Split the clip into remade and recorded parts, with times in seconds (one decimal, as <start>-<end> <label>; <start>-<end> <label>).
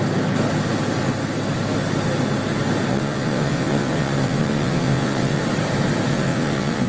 0.0-2.9 recorded; 2.9-5.4 remade; 5.4-6.1 recorded; 6.1-6.9 remade